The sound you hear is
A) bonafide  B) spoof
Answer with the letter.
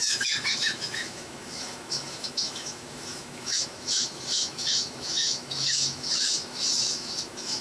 B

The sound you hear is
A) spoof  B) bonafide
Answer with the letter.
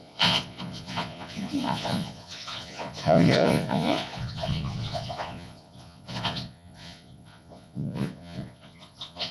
A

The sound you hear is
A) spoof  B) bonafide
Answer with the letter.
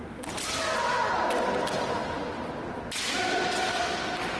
B